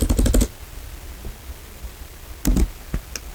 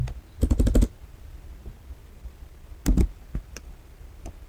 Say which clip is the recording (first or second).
first